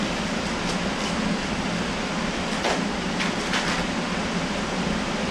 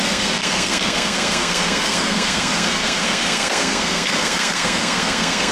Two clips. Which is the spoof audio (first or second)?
second